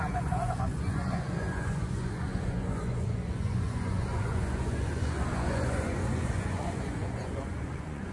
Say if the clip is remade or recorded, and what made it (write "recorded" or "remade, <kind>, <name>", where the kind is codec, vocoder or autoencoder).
remade, vocoder, Vocos